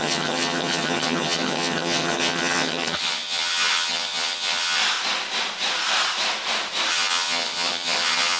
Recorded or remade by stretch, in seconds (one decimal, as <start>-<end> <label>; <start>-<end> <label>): 0.0-4.8 remade; 4.8-6.9 recorded; 6.9-8.4 remade